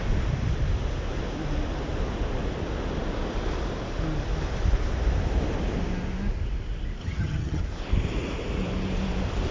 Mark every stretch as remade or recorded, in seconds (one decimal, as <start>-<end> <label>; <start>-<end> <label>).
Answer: 0.0-7.0 recorded; 7.0-7.6 remade; 7.6-9.5 recorded